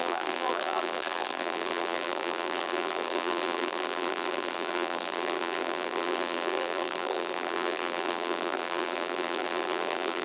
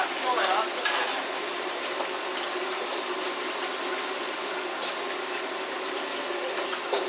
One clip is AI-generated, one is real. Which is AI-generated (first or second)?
first